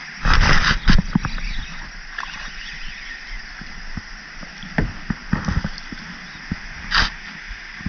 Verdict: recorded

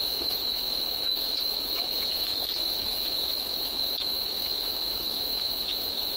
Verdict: remade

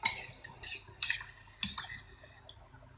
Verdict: recorded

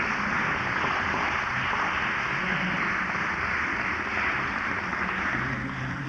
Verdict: recorded